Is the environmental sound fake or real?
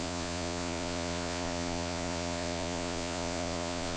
fake